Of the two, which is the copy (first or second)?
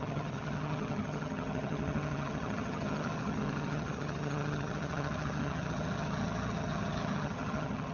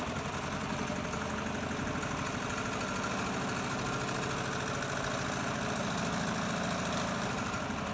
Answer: first